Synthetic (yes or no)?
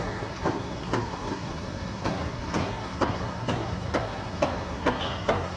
yes